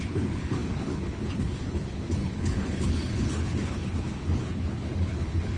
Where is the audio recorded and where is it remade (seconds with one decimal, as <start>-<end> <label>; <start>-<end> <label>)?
0.0-5.6 remade